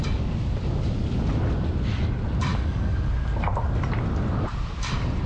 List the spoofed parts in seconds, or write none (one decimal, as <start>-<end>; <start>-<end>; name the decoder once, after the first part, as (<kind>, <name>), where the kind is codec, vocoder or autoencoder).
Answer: 2.5-3.0 (codec, DAC)